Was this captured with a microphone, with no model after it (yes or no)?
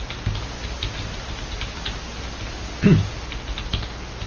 yes